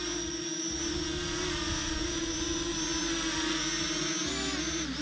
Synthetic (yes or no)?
no